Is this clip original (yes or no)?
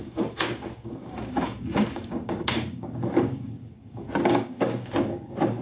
no